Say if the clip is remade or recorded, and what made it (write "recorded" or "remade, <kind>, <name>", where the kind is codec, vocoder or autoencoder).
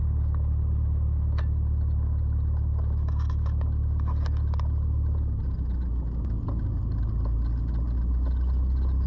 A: recorded